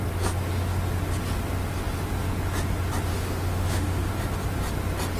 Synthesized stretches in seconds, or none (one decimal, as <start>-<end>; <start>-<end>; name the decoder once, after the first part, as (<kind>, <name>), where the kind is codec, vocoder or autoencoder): 3.1-4.1 (autoencoder, DAC-VAE)

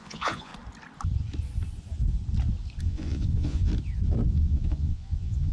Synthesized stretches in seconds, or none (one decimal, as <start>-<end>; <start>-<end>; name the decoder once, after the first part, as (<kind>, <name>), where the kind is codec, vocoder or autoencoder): 0.0-0.5 (vocoder, Vocos); 2.8-3.7; 4.3-5.5

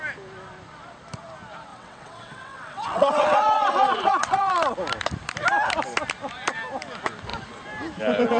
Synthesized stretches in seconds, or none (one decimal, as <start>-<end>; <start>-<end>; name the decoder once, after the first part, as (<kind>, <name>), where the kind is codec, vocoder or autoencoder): 1.7-4.5 (vocoder, WaveNeXt)

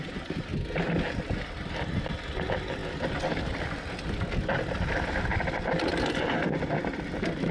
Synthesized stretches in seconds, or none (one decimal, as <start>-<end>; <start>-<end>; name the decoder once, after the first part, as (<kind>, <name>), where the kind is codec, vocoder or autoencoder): none

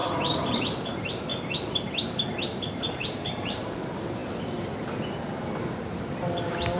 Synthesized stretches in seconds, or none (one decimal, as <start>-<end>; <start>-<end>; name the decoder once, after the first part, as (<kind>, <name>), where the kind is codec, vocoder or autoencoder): 0.5-1.3 (vocoder, BigVGAN v2); 2.9-4.2

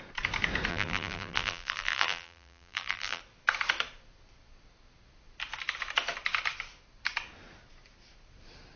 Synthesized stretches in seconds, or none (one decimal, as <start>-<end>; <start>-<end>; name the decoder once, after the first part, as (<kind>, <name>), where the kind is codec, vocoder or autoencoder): 0.7-3.2 (vocoder, BigVGAN v2)

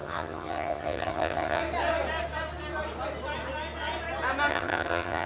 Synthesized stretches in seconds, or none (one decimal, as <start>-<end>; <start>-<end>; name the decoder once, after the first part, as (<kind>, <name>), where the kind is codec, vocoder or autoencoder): 0.0-1.6 (vocoder, HiFi-GAN); 4.5-5.3